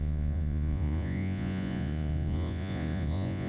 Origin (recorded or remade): remade